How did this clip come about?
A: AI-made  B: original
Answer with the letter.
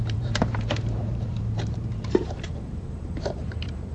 A